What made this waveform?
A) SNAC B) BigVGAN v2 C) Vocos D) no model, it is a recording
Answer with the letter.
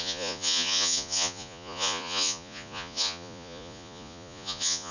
C